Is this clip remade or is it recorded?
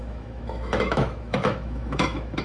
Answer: remade